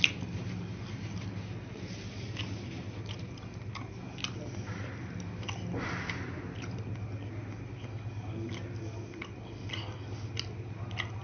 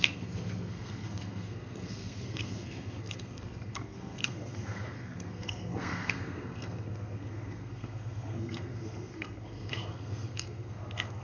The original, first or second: first